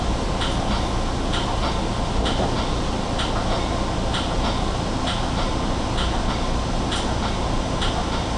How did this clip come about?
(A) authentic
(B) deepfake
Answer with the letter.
A